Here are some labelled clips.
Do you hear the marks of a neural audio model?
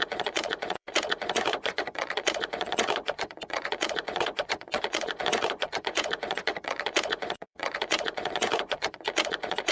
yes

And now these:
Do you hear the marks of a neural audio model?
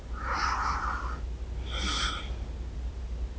no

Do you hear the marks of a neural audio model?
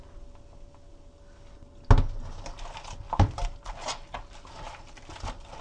no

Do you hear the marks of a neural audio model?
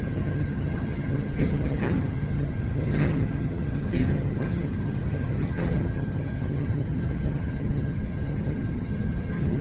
yes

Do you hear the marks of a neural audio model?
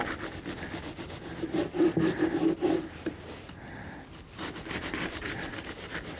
no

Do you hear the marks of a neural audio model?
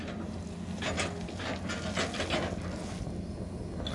no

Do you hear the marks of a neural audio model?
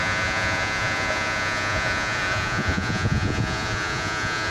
yes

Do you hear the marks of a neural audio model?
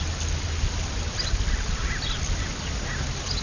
no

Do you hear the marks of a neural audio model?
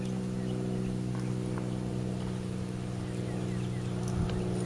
no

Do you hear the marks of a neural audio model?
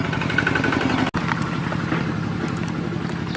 no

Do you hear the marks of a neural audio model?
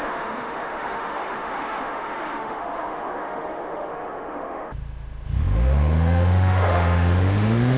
yes